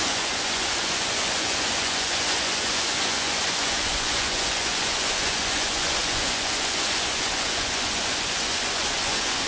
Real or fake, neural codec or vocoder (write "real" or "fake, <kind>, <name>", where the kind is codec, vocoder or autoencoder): fake, vocoder, Vocos